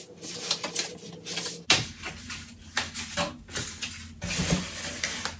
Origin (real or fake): real